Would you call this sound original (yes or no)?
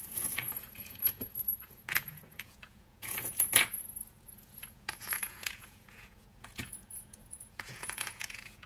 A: no